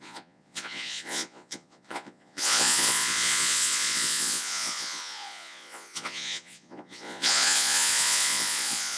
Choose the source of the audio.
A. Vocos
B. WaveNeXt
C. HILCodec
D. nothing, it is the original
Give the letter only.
A